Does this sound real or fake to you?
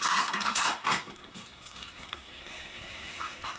fake